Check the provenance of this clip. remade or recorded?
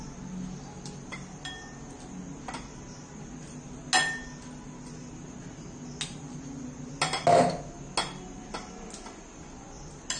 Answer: recorded